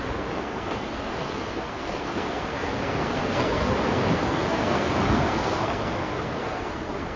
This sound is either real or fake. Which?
fake